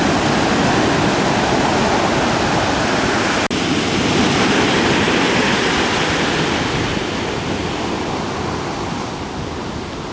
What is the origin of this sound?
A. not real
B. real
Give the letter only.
B